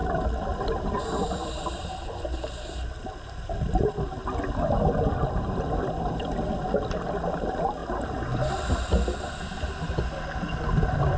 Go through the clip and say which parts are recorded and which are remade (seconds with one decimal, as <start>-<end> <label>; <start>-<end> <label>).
0.0-3.1 remade; 3.1-7.8 recorded; 7.8-8.9 remade; 8.9-11.2 recorded